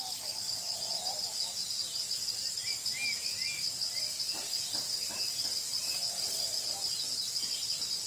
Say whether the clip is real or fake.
real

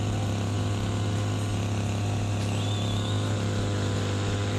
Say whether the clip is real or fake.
real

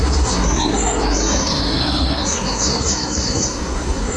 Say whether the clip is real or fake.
fake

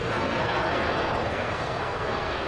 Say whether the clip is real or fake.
fake